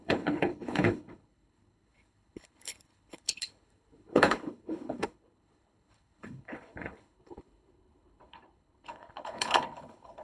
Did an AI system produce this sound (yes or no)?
yes